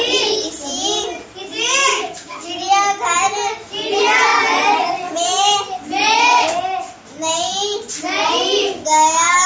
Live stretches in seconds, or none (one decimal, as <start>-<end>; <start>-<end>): 0.0-1.9; 2.5-9.5